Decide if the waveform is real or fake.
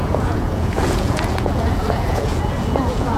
fake